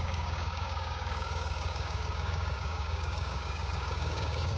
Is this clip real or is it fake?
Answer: fake